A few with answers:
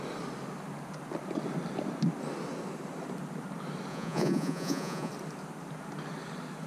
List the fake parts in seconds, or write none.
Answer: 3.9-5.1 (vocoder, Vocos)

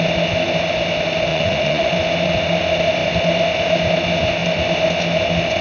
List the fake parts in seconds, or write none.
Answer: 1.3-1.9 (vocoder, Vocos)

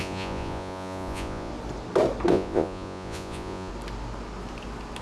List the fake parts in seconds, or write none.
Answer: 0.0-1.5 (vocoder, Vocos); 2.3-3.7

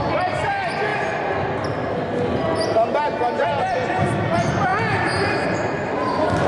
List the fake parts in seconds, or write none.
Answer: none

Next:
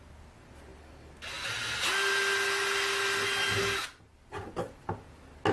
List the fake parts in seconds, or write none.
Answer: none